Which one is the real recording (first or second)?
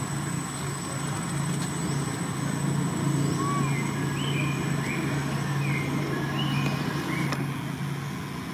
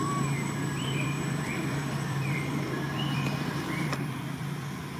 first